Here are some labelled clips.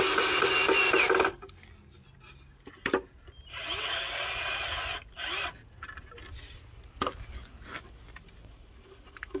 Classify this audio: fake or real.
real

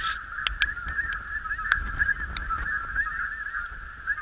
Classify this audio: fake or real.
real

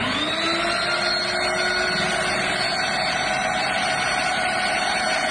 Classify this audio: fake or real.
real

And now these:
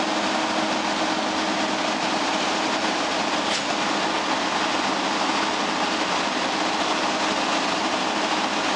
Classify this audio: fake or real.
real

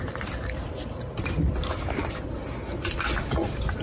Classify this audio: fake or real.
real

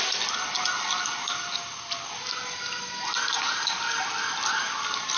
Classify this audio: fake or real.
real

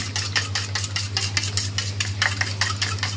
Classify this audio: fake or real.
real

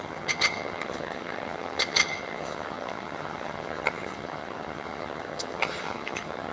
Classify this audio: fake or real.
fake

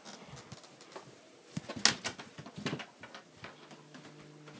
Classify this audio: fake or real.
real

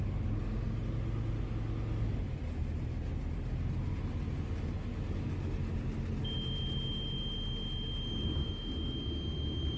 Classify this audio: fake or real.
real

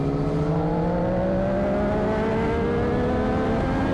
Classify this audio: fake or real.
real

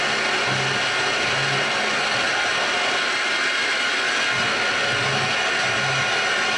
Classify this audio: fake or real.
real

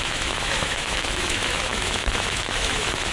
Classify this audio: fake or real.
fake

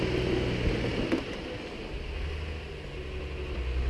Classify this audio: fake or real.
real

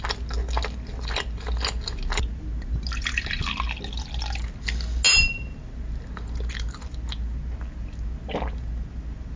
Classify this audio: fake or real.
real